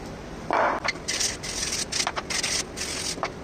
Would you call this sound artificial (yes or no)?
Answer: no